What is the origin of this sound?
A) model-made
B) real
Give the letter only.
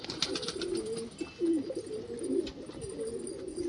B